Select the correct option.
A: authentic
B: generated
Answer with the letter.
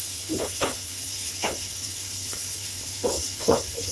B